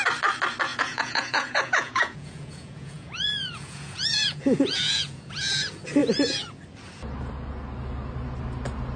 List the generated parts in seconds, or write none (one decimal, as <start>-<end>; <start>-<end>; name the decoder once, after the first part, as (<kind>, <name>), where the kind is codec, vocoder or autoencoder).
0.7-5.3 (vocoder, Vocos)